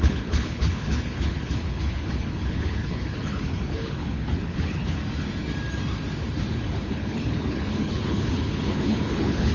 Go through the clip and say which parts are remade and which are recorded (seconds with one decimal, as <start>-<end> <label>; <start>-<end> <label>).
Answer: 0.0-5.0 remade; 5.0-6.5 recorded; 6.5-9.5 remade